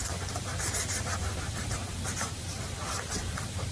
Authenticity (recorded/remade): remade